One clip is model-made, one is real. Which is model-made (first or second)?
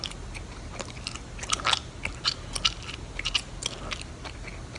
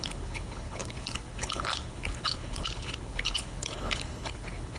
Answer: second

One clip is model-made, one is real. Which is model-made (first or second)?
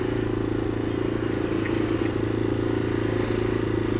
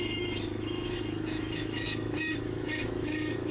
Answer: second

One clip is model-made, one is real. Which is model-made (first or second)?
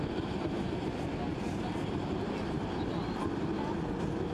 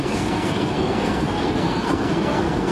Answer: second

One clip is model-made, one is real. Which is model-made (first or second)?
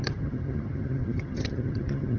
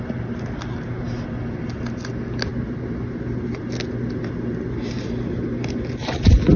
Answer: first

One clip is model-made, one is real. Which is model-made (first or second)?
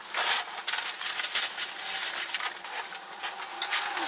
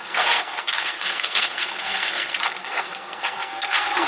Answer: second